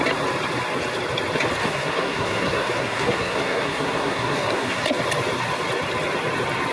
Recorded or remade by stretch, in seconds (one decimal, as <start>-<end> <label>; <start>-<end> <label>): 0.0-1.6 recorded; 1.6-4.8 remade; 4.8-6.7 recorded